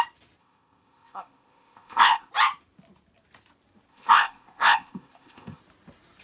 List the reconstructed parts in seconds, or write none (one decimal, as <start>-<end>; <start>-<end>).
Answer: 0.4-2.3; 3.9-5.6